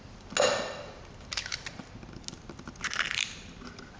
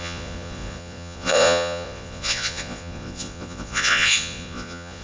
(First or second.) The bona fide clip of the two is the first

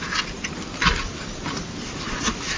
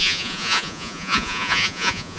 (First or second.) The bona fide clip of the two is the first